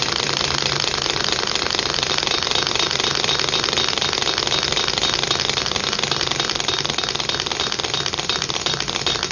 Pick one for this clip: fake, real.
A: real